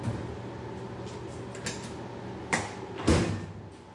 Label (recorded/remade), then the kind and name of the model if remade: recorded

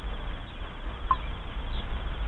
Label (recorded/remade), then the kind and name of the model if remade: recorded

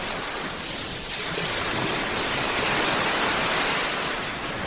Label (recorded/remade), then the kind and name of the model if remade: recorded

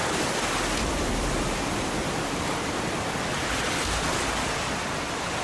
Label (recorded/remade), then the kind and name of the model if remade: recorded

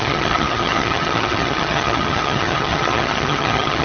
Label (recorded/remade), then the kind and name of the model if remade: remade, vocoder, HiFi-GAN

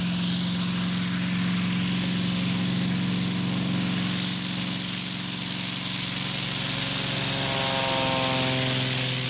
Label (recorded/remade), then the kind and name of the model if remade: recorded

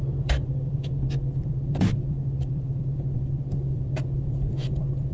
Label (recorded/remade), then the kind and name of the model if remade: remade, vocoder, BigVGAN v2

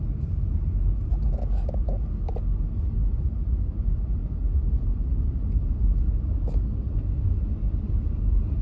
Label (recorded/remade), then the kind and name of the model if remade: recorded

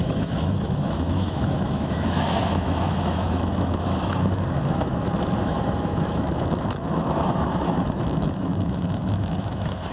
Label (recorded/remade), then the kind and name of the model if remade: remade, autoencoder, DAC-VAE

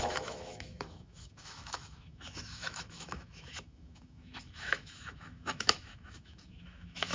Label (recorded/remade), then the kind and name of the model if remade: remade, autoencoder, DAC-VAE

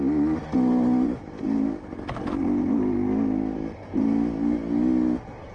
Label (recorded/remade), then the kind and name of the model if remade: recorded